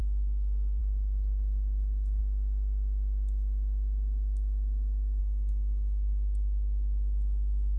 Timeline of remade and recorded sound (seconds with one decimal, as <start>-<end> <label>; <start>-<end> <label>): 0.0-2.2 remade; 2.2-5.2 recorded; 5.2-7.8 remade